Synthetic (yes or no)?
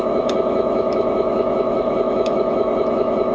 yes